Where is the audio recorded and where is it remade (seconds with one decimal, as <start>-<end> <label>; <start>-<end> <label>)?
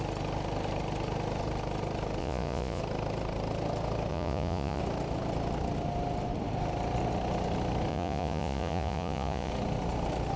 0.0-2.2 recorded; 2.2-2.8 remade; 2.8-4.1 recorded; 4.1-4.8 remade; 4.8-7.9 recorded; 7.9-9.5 remade; 9.5-10.4 recorded